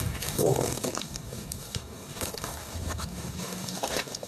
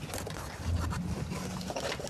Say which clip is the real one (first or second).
second